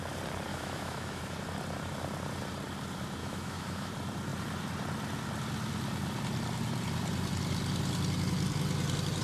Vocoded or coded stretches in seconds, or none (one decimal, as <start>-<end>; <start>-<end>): 0.5-1.2; 3.2-3.9